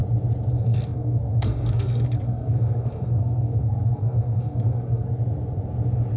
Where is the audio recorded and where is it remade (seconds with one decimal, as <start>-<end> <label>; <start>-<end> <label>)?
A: 0.0-0.5 recorded; 0.5-5.1 remade; 5.1-6.2 recorded